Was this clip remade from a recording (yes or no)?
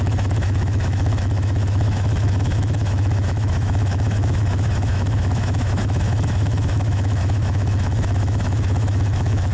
yes